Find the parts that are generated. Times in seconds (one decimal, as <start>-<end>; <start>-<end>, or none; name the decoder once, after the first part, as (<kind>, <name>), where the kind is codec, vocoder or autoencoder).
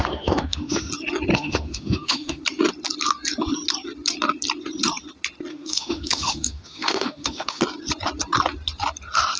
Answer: 0.0-0.9 (autoencoder, DAC-VAE); 1.3-2.4; 5.5-7.6